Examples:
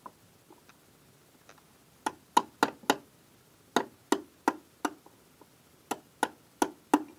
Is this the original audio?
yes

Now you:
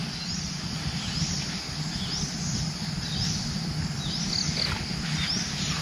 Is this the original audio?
yes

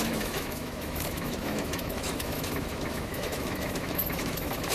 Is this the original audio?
no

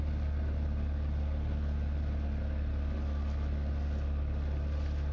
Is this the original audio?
yes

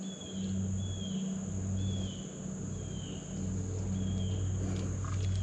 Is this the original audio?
yes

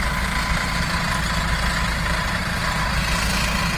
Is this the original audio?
yes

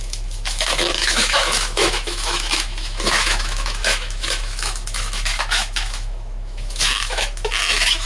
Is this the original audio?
no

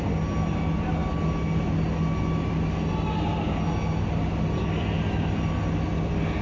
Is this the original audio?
yes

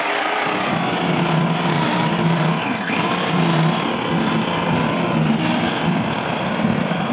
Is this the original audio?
yes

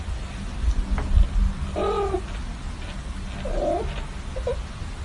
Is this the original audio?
yes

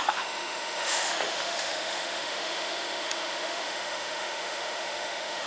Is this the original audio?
no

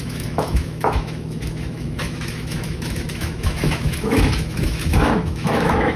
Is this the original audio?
no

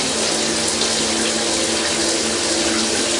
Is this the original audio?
yes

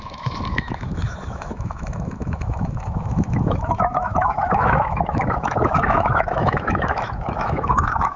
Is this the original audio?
no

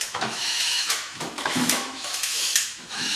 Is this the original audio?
no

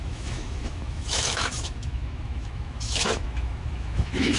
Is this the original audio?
no